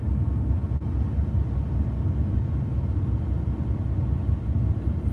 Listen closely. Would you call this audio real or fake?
real